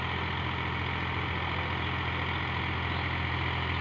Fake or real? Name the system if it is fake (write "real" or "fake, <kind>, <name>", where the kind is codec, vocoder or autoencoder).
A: real